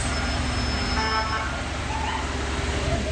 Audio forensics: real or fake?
real